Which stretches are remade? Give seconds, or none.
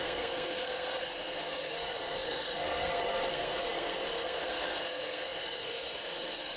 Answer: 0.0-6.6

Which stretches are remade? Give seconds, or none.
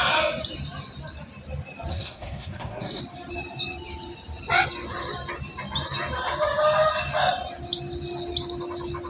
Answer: 1.9-3.0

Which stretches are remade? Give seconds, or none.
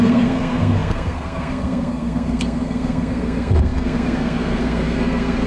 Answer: 0.0-5.5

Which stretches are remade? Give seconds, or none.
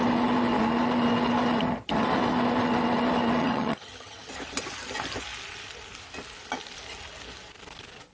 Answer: 3.4-4.3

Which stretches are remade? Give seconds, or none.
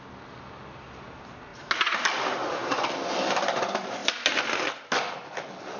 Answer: none